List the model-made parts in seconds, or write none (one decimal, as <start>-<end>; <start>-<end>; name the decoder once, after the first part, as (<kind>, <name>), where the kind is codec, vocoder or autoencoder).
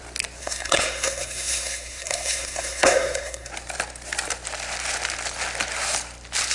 0.4-3.5 (codec, SNAC)